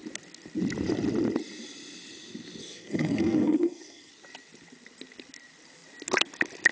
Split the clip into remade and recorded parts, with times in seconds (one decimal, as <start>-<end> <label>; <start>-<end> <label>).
0.0-2.6 recorded; 2.6-4.1 remade; 4.1-6.7 recorded